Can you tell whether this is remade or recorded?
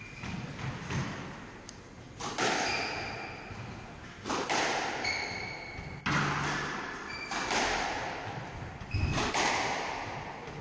recorded